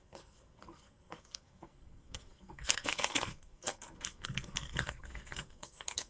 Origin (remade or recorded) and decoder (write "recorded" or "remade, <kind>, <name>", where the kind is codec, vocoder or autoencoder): remade, codec, SNAC